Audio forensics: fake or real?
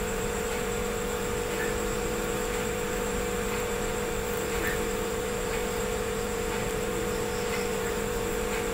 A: fake